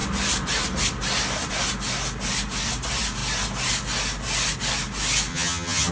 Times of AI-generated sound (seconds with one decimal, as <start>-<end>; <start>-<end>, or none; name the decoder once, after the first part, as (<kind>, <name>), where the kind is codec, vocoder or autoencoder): 5.3-5.9 (vocoder, HiFi-GAN)